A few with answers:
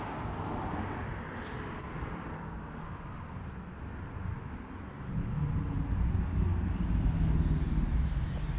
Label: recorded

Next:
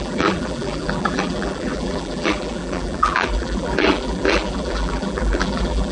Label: remade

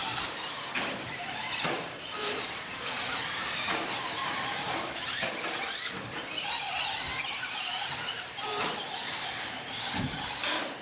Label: remade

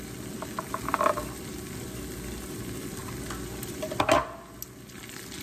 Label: recorded